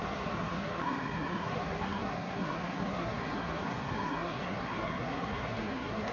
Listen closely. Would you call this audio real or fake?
fake